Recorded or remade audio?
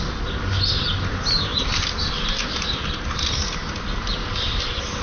recorded